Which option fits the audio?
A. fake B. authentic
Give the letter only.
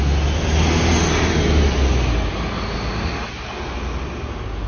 B